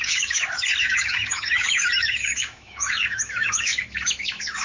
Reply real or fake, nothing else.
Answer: fake